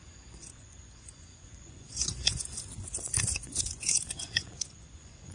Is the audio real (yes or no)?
no